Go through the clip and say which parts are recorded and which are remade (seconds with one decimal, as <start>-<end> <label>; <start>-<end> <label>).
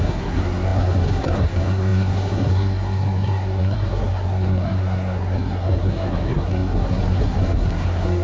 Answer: 0.0-8.2 remade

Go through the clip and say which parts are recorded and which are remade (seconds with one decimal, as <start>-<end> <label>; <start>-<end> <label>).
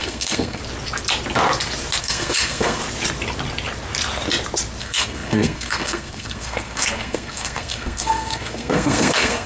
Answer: 0.0-0.6 remade; 0.6-2.0 recorded; 2.0-2.8 remade; 2.8-4.8 recorded; 4.8-9.5 remade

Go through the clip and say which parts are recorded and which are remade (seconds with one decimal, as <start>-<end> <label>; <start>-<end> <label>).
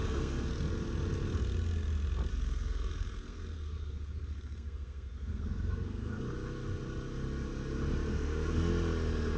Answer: 0.0-0.5 remade; 0.5-2.3 recorded; 2.3-6.2 remade; 6.2-8.1 recorded; 8.1-8.7 remade; 8.7-9.4 recorded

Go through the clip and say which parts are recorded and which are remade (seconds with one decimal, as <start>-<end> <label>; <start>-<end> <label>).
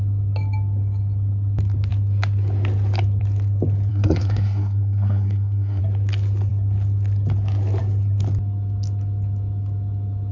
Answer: 0.0-3.9 recorded; 3.9-5.8 remade; 5.8-10.3 recorded